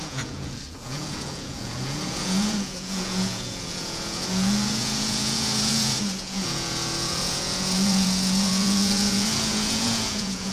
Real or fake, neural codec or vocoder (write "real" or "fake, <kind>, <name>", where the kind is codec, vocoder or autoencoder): fake, vocoder, Vocos